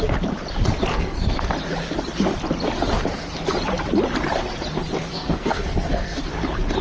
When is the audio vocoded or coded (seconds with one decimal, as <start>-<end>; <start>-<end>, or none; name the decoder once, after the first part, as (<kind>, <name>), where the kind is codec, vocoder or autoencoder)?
0.9-1.5 (codec, SNAC); 5.1-6.2